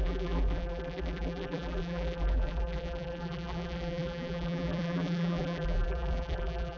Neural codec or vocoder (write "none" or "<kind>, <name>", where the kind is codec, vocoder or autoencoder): vocoder, BigVGAN v2